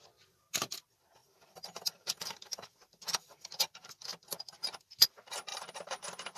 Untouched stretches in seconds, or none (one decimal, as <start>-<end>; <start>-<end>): 0.0-1.2; 3.5-5.5; 6.0-6.4